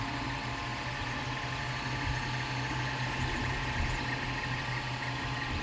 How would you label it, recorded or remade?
recorded